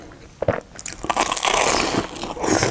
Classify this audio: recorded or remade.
recorded